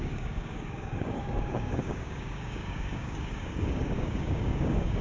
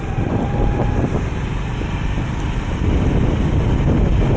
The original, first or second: second